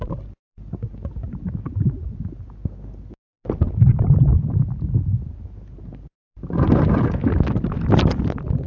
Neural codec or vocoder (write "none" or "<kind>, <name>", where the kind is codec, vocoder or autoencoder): none